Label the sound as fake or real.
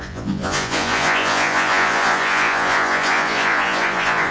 fake